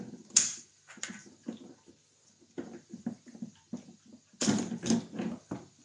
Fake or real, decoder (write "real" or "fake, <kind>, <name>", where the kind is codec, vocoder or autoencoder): real